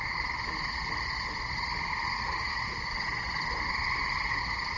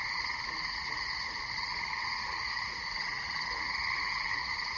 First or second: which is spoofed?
second